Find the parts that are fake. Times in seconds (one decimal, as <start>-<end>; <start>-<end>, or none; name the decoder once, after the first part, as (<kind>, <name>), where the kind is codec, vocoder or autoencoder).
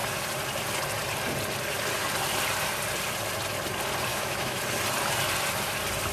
4.1-4.6 (autoencoder, DAC-VAE)